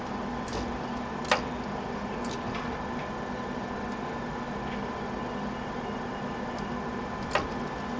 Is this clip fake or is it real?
real